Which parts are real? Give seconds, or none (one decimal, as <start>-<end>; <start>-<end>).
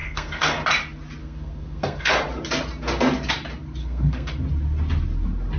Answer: 0.6-1.2; 2.1-3.8; 4.3-5.6